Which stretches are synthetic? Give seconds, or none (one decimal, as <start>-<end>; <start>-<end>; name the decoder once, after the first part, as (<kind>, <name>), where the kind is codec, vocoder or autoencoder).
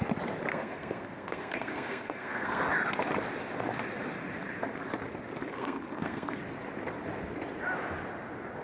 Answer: 0.5-2.6 (codec, SNAC); 5.5-6.4